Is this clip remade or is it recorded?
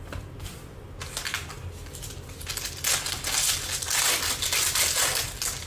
recorded